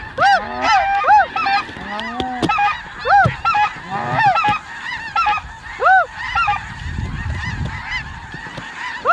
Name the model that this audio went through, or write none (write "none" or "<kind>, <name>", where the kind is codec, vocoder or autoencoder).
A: none